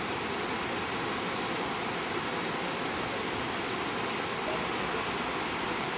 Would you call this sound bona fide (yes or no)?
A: yes